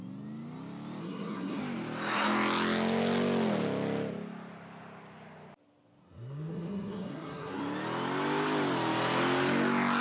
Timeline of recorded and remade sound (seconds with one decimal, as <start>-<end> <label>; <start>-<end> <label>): 0.0-1.0 recorded; 1.0-1.6 remade; 1.6-6.0 recorded; 6.0-7.6 remade; 7.6-10.0 recorded